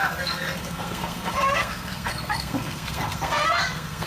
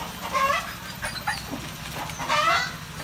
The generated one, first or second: first